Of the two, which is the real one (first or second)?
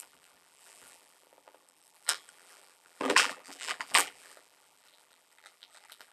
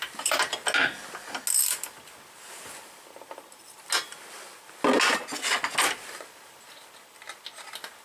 second